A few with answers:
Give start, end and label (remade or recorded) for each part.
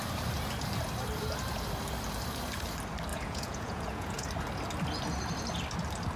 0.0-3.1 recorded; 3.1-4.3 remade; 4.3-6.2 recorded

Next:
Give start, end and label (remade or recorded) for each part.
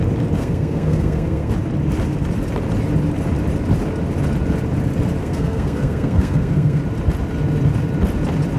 0.0-0.4 recorded; 0.4-1.5 remade; 1.5-5.2 recorded; 5.2-6.8 remade; 6.8-8.6 recorded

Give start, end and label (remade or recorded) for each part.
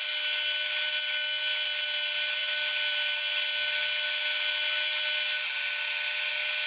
0.0-6.7 recorded